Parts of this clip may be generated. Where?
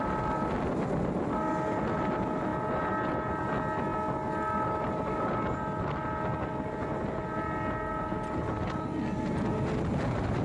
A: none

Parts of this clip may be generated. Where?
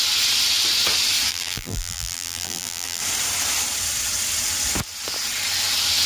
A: 1.3-3.0 (vocoder, BigVGAN v2)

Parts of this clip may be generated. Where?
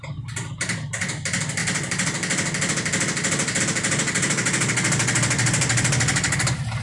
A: none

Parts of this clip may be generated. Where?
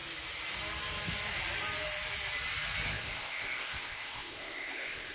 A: 2.9-5.1 (codec, ZipCodec)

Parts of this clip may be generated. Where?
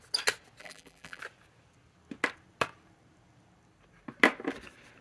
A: 0.6-1.2 (vocoder, BigVGAN v2)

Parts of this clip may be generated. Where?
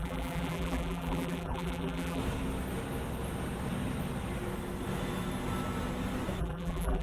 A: 0.0-2.2 (vocoder, BigVGAN v2); 6.4-7.0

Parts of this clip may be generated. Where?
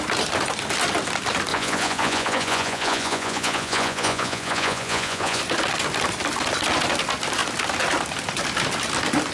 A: 1.5-5.4 (vocoder, Vocos)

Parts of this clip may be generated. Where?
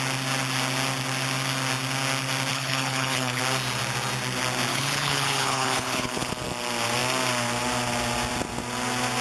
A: 2.5-3.4 (codec, HILCodec); 4.7-6.3